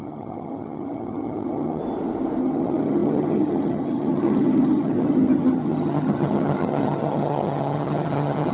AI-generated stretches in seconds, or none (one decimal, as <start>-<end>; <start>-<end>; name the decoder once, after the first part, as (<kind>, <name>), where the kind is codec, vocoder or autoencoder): 0.0-1.8 (vocoder, HiFi-GAN); 2.4-8.5